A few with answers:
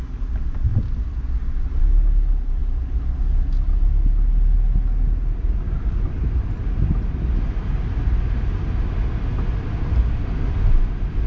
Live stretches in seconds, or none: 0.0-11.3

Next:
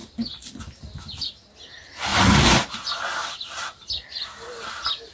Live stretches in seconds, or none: 0.0-5.1

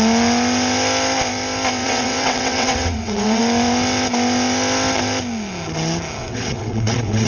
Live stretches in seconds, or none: 0.0-1.8; 3.4-6.2

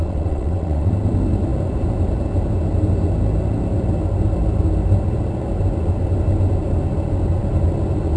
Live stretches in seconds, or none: 0.9-8.2

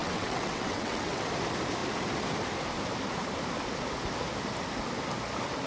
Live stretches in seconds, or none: 1.3-5.7

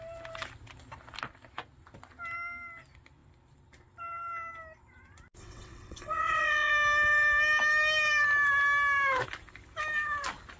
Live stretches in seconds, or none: 0.0-5.4; 6.7-10.6